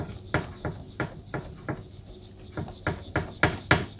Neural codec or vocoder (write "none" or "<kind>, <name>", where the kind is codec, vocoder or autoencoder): none